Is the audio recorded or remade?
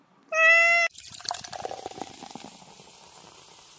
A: recorded